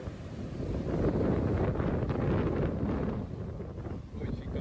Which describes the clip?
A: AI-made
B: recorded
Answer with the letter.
B